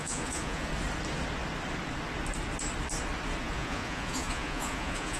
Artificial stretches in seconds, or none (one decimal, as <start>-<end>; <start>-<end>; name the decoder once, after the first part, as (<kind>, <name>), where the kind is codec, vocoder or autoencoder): 0.0-0.7 (vocoder, Vocos); 3.4-5.2